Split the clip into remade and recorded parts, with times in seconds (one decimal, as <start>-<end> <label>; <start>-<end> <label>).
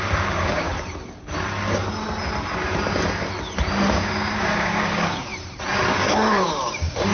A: 0.0-0.7 remade; 0.7-3.9 recorded; 3.9-5.3 remade; 5.3-5.9 recorded; 5.9-7.1 remade